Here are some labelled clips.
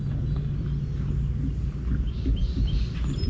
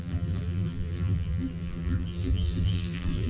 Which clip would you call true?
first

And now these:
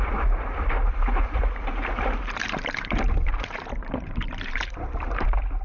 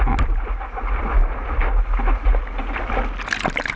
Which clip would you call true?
second